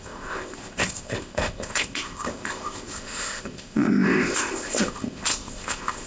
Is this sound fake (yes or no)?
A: yes